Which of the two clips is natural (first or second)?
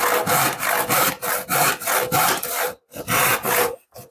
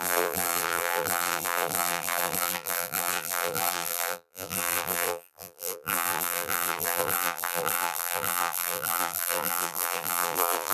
first